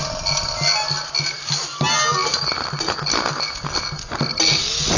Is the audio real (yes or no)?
yes